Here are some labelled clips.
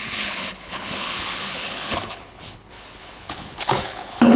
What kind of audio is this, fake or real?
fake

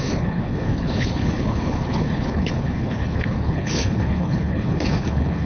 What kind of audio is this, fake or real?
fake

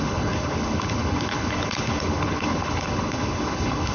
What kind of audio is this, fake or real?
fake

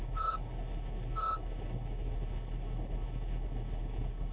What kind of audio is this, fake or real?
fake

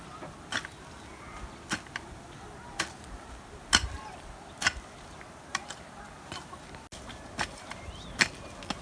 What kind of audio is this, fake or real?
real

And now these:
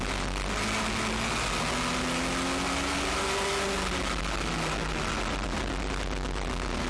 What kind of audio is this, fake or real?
real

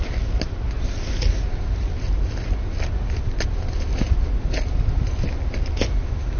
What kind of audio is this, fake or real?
real